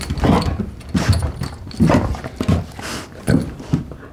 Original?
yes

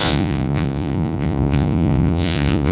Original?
no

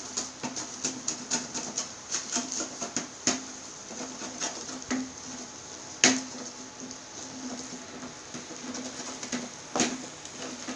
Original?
yes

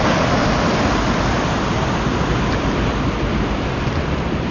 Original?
yes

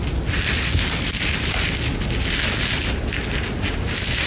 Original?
yes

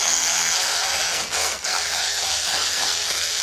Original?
no